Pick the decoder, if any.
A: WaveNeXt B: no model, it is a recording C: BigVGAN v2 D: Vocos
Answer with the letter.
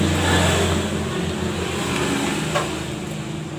B